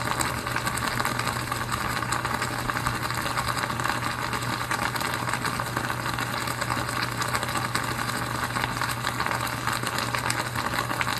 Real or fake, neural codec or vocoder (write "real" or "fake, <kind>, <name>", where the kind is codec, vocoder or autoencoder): real